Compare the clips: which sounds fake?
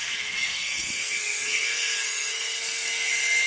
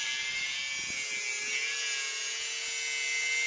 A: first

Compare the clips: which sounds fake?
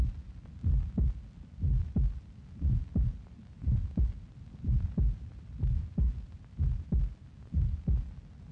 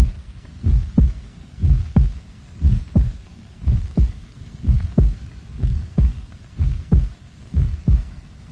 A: second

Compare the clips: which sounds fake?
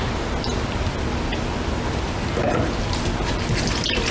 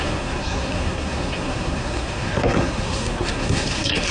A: second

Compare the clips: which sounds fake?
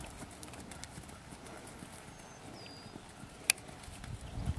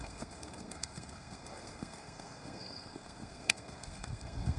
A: second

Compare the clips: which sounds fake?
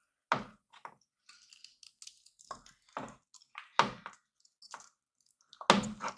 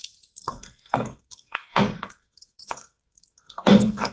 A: second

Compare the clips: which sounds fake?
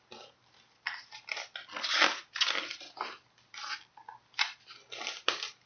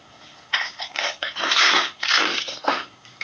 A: second